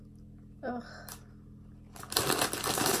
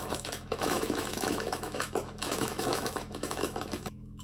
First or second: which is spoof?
second